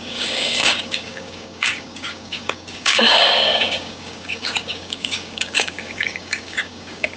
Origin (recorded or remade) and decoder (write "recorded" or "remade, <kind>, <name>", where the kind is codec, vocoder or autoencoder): remade, codec, DAC